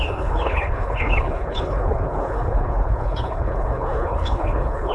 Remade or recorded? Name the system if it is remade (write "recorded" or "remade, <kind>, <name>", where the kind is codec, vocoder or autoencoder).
remade, codec, HILCodec